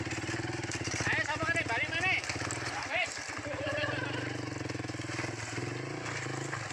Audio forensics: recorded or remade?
recorded